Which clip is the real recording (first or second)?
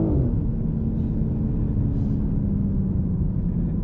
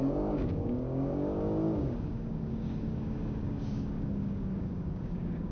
first